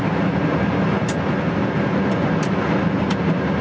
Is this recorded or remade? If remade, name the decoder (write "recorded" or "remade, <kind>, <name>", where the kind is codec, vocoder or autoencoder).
recorded